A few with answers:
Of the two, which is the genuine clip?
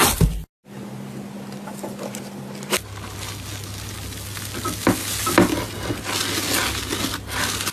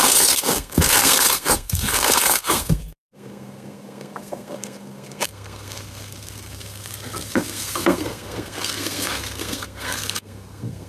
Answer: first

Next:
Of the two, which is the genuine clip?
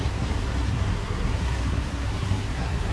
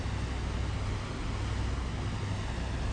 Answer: second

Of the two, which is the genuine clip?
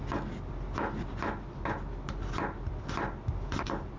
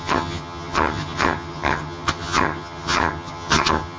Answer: first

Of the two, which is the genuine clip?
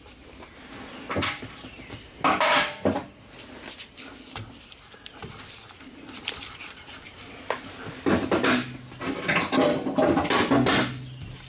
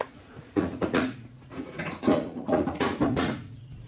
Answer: first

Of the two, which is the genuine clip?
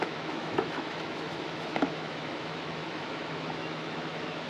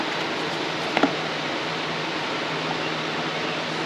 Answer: second